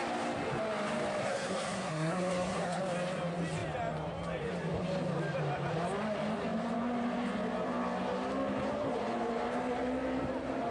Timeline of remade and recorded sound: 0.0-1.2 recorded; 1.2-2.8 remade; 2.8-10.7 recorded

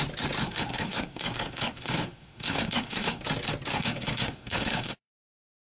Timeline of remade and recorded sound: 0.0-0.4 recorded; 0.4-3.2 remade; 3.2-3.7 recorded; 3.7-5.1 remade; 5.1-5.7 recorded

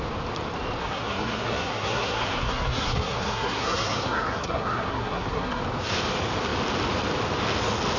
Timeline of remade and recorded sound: 0.0-0.8 recorded; 0.8-5.6 remade; 5.6-8.0 recorded

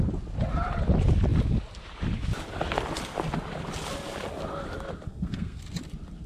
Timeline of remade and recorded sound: 0.0-5.1 recorded; 5.1-5.6 remade; 5.6-6.3 recorded